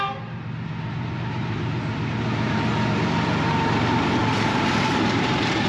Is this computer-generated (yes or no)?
yes